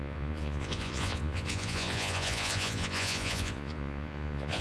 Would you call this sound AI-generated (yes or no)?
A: yes